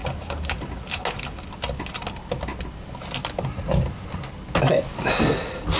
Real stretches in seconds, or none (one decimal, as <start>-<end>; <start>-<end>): 0.0-5.8